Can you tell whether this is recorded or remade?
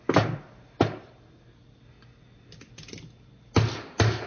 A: recorded